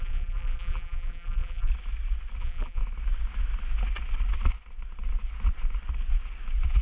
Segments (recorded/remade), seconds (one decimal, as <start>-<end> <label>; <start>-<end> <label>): 0.0-1.7 remade; 1.7-2.4 recorded; 2.4-2.8 remade; 2.8-6.8 recorded